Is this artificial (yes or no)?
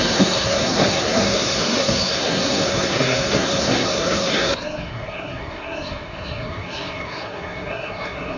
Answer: yes